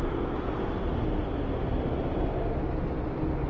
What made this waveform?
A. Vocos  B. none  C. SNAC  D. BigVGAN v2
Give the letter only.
B